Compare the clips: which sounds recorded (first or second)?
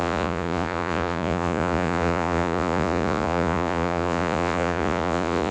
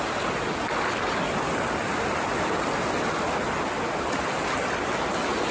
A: second